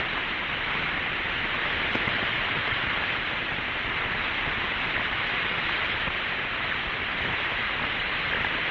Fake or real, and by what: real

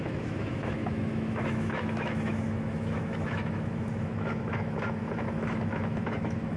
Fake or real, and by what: fake, autoencoder, DAC-VAE